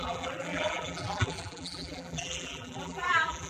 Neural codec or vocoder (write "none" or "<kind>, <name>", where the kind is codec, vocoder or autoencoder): vocoder, BigVGAN v2